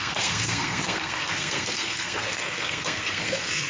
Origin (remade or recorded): remade